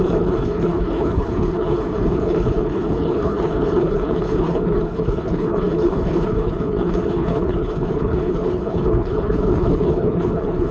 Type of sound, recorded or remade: remade